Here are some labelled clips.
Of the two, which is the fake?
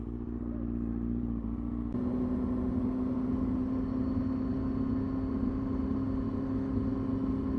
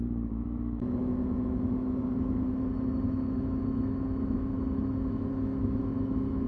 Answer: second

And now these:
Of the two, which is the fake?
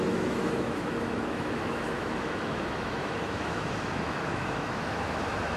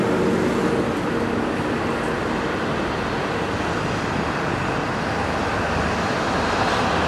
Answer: first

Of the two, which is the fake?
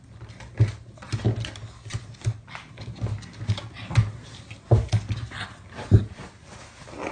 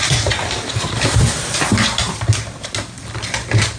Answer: second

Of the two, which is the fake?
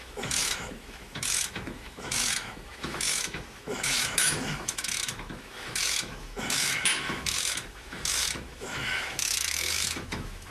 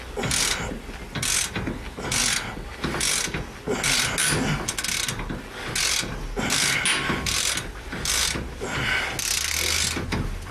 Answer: first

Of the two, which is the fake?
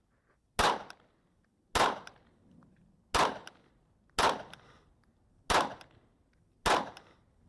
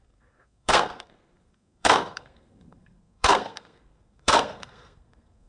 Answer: second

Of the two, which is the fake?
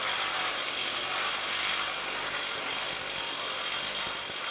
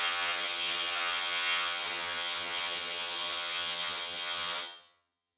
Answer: second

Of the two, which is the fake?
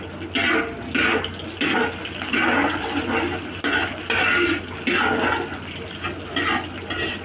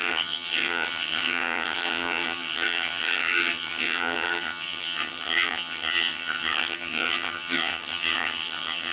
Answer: second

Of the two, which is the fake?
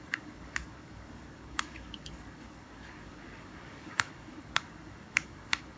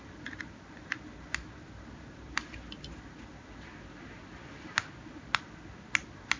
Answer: first